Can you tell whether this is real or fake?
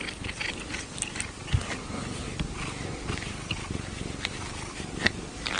real